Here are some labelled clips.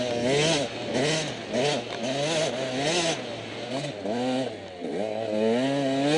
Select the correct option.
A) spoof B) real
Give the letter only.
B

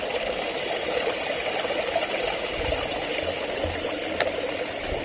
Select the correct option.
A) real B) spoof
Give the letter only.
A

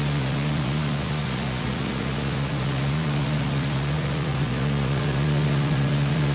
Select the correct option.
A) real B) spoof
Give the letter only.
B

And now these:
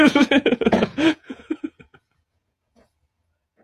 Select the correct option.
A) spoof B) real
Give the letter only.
A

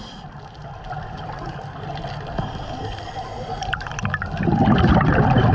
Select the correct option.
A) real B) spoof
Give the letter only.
A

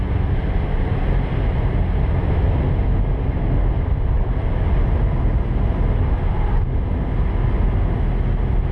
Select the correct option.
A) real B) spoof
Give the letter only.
A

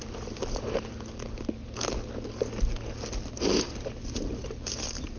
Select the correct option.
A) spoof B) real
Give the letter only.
B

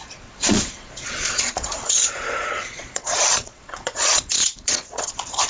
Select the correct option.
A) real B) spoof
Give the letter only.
B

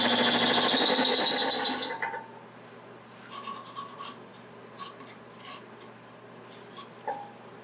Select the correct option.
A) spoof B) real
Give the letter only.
B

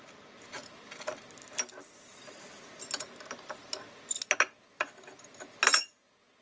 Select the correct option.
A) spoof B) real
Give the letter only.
B